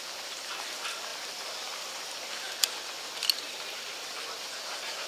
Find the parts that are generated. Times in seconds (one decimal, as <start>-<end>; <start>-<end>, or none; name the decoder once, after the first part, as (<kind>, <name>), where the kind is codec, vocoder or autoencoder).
none